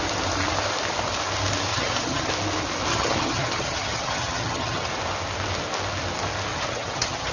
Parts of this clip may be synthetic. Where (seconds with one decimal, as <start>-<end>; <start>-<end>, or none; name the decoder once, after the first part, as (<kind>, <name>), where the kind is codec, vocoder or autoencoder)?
1.7-2.3 (vocoder, HiFi-GAN); 2.9-4.9; 6.5-7.3